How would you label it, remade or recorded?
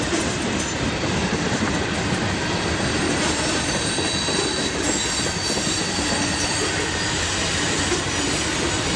recorded